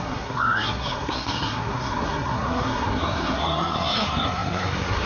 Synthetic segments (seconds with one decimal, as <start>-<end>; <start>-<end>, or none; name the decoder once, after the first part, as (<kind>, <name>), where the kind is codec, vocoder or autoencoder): 0.0-5.1 (codec, SNAC)